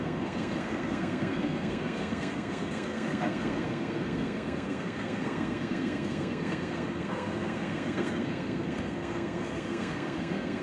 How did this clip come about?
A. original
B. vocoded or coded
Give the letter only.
B